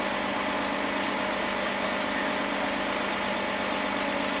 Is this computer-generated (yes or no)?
no